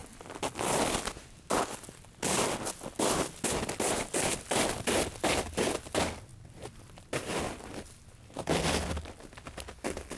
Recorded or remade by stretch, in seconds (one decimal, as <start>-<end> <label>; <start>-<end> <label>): 0.0-10.2 recorded